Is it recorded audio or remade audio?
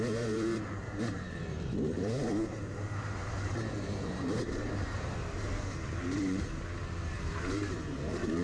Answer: remade